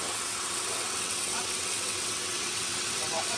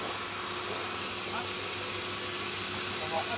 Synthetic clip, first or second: first